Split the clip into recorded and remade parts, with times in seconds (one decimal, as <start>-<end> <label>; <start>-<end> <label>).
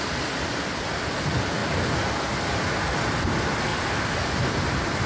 0.0-3.7 recorded; 3.7-5.1 remade